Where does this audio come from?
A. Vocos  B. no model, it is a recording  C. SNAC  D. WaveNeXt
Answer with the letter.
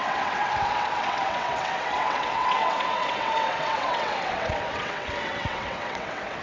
D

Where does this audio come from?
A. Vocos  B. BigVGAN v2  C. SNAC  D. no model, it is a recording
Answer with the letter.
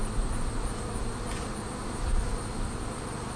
D